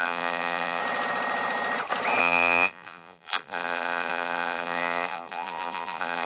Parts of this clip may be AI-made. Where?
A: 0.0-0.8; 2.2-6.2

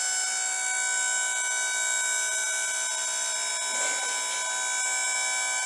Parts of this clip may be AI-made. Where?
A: 3.0-3.5